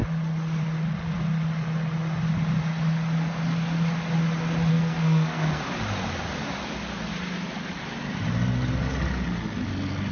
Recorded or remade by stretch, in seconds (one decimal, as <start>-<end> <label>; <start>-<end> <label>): 0.0-4.7 recorded; 4.7-5.6 remade; 5.6-10.1 recorded